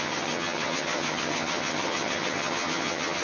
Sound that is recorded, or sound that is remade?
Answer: remade